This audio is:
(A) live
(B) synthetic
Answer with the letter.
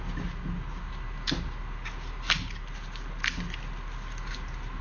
A